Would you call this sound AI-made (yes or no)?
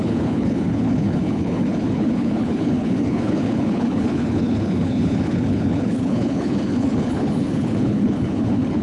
yes